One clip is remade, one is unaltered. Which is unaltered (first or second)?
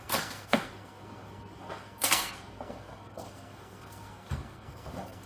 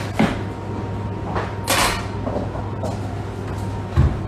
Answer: second